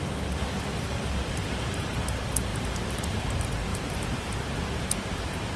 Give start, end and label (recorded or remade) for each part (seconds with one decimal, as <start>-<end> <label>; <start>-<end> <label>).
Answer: 0.0-2.5 recorded; 2.5-3.2 remade; 3.2-3.7 recorded; 3.7-4.4 remade; 4.4-5.6 recorded